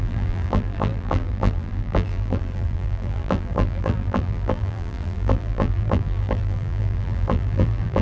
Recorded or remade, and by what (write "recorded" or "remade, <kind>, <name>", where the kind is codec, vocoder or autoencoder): remade, vocoder, BigVGAN v2